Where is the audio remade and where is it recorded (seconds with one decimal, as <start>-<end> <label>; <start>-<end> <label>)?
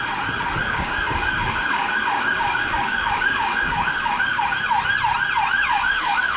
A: 0.0-0.6 recorded; 0.6-4.4 remade; 4.4-5.7 recorded; 5.7-6.4 remade